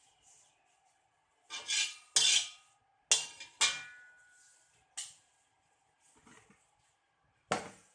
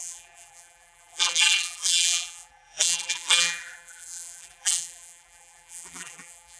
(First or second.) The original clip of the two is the first